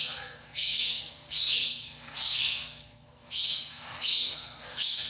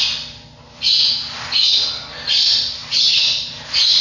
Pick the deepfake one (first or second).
first